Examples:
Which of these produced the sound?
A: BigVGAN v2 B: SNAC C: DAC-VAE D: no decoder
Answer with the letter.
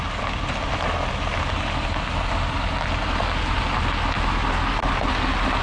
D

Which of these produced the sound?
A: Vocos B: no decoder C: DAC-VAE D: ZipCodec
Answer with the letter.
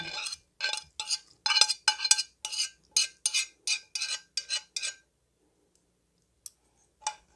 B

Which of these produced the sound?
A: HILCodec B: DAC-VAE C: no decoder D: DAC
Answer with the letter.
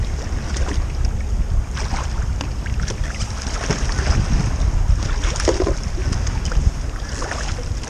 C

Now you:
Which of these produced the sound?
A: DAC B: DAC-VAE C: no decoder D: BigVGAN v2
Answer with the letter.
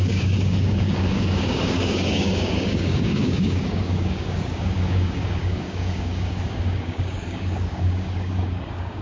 A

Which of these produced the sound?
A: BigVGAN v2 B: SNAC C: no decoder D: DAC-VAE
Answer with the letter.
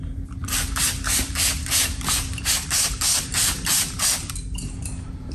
A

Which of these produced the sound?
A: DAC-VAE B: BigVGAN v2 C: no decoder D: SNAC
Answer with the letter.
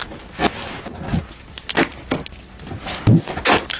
C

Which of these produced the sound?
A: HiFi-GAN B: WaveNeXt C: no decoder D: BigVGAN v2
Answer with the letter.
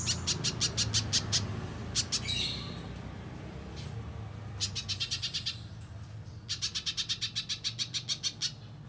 C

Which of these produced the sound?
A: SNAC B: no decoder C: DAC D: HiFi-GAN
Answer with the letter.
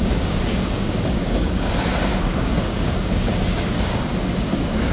C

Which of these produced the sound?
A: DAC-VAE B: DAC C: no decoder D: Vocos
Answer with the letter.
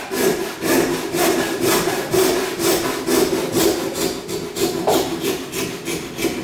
C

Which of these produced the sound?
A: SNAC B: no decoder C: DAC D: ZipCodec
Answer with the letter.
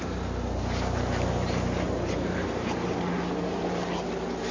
B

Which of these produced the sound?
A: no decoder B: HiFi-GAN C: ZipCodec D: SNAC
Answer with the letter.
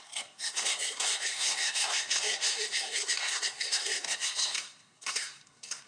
D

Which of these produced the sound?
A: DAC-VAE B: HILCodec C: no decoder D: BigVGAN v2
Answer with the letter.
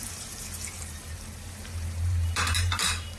D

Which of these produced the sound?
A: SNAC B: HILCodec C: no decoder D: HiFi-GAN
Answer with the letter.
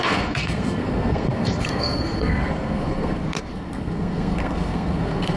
A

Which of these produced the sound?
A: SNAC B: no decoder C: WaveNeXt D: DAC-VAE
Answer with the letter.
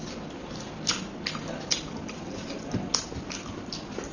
B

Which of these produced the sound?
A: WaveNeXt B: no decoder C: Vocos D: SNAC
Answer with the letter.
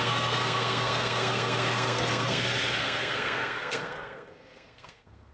D